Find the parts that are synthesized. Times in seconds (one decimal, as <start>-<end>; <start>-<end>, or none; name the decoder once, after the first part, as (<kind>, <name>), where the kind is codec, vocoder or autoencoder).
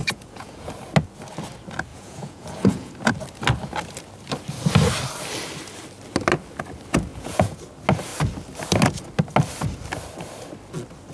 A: 0.0-0.7 (vocoder, Vocos); 1.9-2.9; 7.1-7.6